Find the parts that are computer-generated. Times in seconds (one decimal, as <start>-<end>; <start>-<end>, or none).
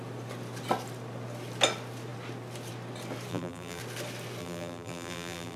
3.3-3.8; 4.4-5.6